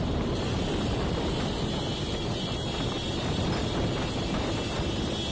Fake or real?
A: real